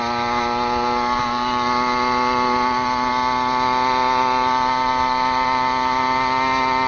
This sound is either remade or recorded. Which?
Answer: remade